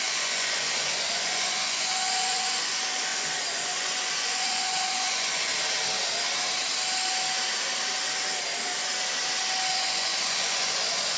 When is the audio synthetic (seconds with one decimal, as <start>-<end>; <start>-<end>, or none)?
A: 0.0-5.5; 9.7-11.2